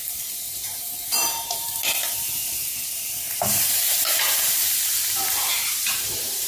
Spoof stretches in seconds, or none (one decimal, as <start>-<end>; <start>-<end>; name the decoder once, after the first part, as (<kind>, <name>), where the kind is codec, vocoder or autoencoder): 0.0-6.5 (vocoder, BigVGAN v2)